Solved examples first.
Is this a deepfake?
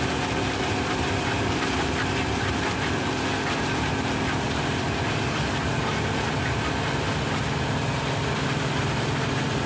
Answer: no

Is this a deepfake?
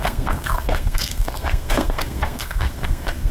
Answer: yes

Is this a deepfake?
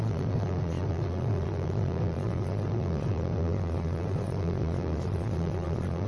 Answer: yes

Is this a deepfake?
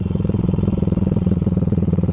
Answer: yes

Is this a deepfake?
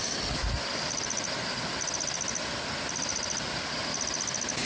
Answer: no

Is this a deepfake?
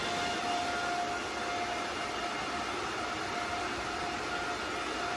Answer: no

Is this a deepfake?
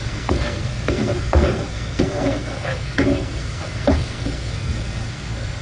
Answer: yes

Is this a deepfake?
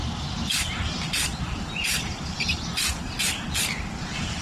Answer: yes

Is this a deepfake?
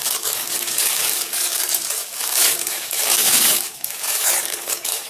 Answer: yes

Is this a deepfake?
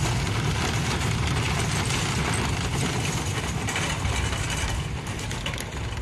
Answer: no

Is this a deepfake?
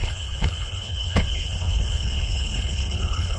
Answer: yes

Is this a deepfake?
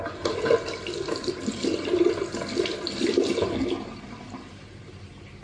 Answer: no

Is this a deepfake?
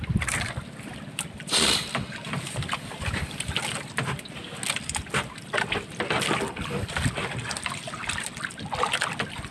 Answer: no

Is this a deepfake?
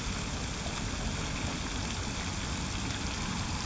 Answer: no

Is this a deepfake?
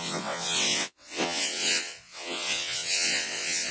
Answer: yes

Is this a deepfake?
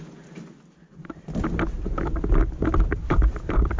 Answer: no